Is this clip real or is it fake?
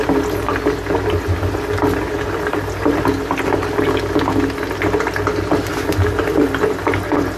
real